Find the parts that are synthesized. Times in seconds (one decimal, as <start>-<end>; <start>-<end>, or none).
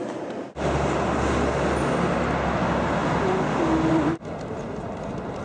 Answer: none